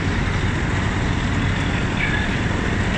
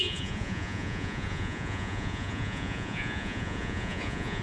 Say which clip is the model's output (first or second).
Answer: second